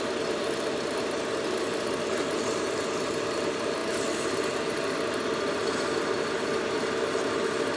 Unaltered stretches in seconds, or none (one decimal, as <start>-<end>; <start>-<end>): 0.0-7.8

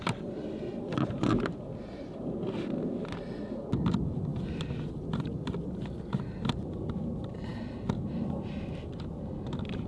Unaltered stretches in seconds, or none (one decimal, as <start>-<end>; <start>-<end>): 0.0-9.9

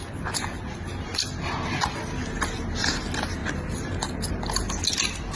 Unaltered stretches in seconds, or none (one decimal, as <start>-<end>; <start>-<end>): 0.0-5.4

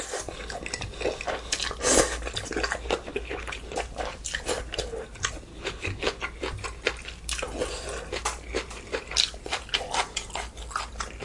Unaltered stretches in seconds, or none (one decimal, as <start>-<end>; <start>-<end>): 0.0-3.1; 3.6-5.5; 6.2-11.2

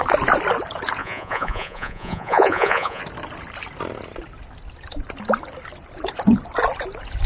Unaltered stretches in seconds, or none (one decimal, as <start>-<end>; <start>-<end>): 0.0-1.0; 3.0-7.3

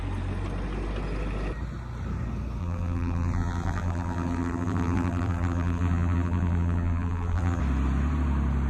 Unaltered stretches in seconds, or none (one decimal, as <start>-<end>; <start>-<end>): 0.0-2.6; 7.6-8.7

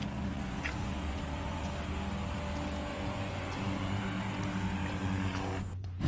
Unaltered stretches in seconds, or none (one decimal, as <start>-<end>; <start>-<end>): 1.7-2.9; 3.9-5.0

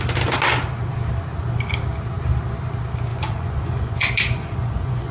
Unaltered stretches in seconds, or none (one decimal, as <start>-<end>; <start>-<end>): 0.0-3.1